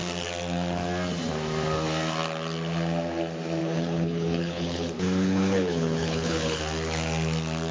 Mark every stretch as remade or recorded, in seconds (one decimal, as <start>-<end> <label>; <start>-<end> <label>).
0.0-3.6 recorded; 3.6-6.6 remade; 6.6-7.7 recorded